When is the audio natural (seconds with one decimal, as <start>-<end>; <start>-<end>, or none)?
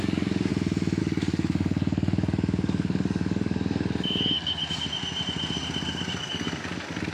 0.5-1.0; 4.6-6.2